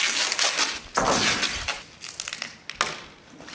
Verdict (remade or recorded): recorded